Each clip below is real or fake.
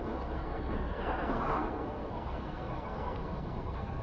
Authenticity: fake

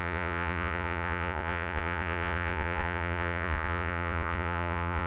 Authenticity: fake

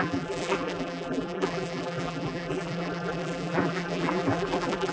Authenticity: fake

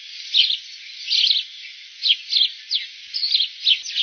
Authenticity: real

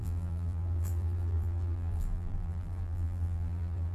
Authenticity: fake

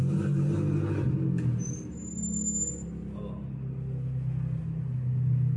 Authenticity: real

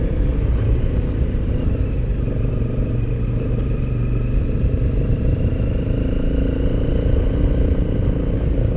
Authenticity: fake